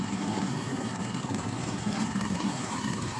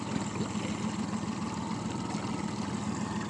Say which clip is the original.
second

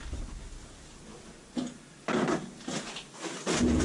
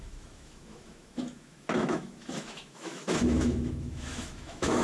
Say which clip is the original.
first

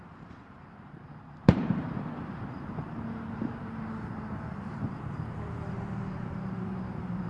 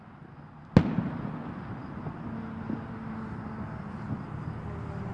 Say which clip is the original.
second